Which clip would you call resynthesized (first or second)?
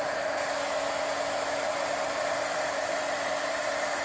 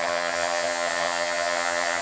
second